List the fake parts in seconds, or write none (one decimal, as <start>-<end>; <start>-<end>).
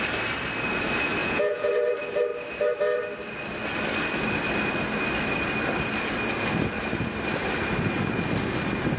1.2-1.7